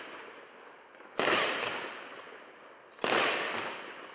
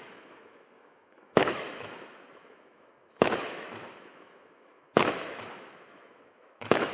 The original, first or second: first